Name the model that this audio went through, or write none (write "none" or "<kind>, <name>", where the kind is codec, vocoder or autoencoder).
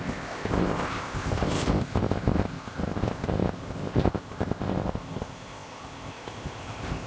codec, ZipCodec